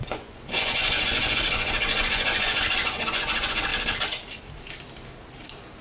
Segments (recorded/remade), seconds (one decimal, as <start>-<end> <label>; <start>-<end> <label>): 0.0-3.7 remade; 3.7-5.8 recorded